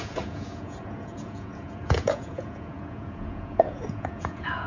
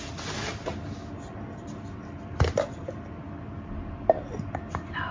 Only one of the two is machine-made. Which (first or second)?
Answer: first